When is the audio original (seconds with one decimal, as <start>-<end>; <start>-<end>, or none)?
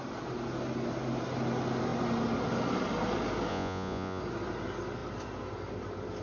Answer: 0.0-3.5; 4.2-6.2